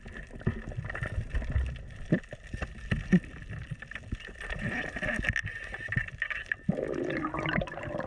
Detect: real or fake real